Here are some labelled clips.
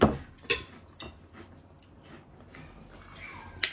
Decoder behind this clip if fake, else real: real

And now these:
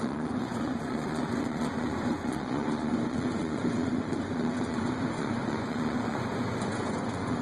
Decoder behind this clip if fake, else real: fake, vocoder, Vocos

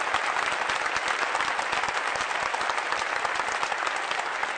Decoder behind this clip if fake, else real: real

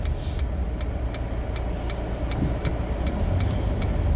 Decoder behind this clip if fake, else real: real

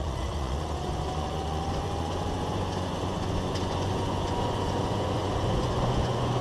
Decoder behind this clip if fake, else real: fake, vocoder, Vocos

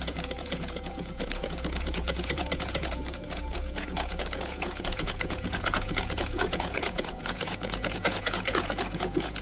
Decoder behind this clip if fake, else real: fake, vocoder, Vocos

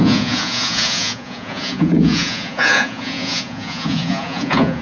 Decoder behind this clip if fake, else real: fake, vocoder, Vocos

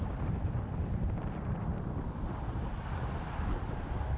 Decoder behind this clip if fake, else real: real